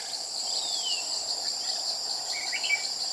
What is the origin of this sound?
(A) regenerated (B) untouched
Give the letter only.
B